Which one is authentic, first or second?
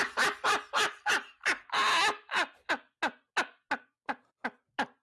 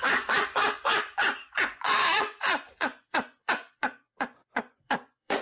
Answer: first